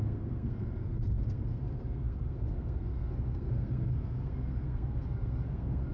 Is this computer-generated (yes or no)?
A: yes